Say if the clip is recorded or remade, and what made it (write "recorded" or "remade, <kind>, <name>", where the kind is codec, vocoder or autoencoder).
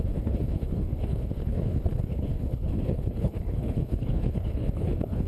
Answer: remade, codec, HILCodec